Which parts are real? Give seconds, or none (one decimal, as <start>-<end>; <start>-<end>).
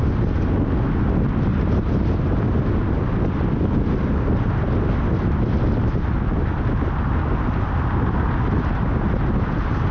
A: 0.0-9.9